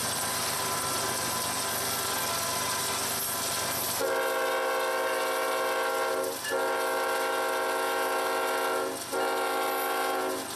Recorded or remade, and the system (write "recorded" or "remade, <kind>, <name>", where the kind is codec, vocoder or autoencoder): recorded